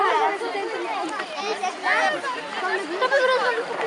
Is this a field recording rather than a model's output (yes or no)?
yes